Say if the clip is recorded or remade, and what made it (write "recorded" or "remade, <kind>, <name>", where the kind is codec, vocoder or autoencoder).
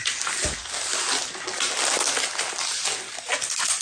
recorded